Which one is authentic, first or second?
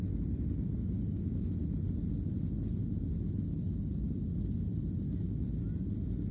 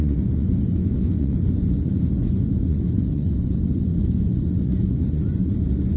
first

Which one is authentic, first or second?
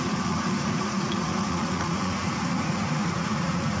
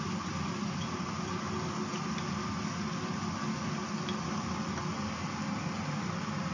second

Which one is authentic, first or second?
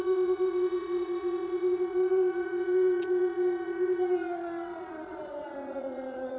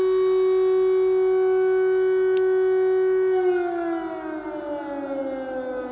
second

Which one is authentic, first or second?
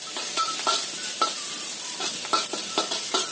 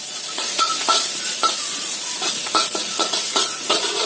first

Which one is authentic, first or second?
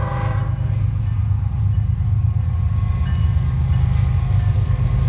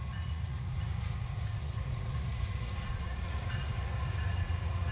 first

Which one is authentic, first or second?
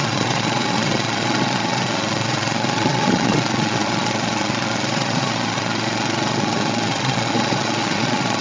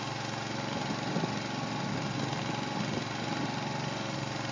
second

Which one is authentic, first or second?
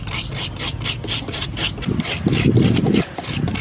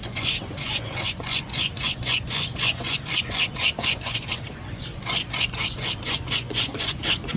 first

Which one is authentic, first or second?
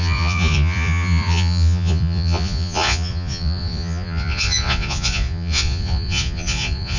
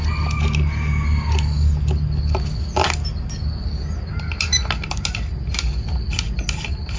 second